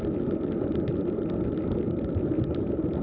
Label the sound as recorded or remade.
recorded